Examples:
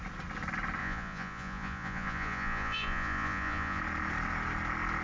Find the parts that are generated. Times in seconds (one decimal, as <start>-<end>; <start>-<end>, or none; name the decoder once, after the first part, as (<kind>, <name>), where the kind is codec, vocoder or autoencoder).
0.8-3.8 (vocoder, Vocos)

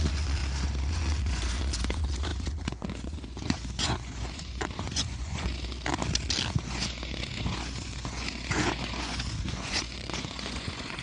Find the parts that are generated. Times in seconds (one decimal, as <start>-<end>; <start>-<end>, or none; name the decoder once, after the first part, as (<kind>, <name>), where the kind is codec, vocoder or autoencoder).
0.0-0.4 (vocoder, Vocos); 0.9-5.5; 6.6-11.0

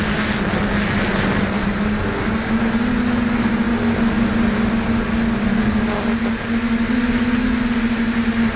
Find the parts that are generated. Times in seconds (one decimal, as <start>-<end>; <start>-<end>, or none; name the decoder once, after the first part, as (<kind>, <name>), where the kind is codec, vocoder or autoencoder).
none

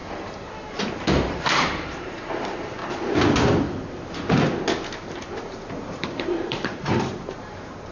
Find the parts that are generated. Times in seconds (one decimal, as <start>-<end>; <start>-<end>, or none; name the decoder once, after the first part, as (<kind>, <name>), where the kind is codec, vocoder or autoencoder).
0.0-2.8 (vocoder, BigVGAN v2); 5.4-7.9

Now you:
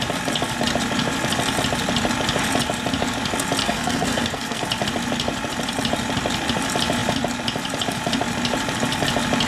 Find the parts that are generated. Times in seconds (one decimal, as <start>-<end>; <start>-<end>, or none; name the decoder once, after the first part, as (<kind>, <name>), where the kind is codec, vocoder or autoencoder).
3.6-4.6 (codec, SNAC)

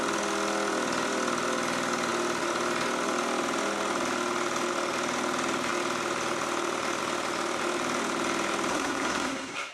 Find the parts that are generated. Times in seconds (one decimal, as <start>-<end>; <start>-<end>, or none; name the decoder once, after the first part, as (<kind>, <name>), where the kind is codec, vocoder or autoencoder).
8.7-9.7 (codec, SNAC)

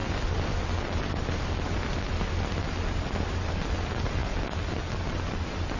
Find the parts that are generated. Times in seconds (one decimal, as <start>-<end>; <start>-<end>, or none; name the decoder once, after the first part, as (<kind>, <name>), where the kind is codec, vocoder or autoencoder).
none

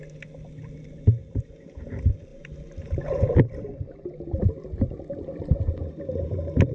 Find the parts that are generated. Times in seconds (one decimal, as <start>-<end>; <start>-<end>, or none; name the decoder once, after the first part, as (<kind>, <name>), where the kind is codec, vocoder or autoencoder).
1.2-1.8 (vocoder, BigVGAN v2); 2.3-3.6